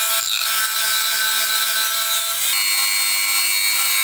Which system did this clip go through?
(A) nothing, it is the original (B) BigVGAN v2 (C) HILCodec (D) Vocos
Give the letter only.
A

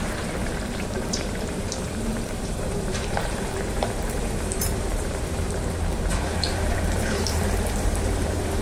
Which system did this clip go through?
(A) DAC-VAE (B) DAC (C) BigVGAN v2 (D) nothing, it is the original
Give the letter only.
C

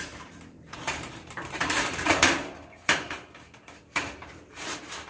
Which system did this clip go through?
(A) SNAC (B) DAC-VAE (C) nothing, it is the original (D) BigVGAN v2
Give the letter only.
D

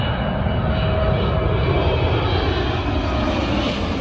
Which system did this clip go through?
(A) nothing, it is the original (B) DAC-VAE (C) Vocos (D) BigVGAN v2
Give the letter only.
A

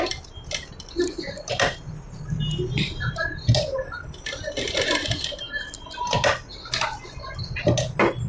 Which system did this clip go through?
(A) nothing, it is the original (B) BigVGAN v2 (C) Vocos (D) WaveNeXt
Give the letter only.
A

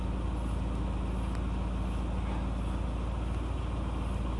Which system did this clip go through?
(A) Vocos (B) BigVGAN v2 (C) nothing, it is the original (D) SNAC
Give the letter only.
C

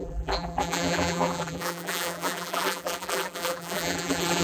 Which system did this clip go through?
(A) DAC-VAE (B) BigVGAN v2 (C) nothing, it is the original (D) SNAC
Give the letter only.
B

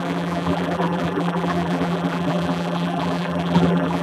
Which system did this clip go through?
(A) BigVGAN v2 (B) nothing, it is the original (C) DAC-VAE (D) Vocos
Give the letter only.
A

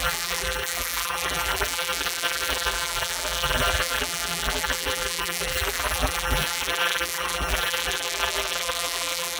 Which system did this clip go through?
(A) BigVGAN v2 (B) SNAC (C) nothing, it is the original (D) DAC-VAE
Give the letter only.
A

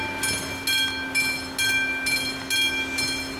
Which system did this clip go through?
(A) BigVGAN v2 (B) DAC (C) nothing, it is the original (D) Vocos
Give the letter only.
C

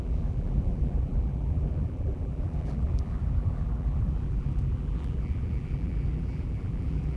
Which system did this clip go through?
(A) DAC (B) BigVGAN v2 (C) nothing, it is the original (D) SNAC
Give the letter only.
B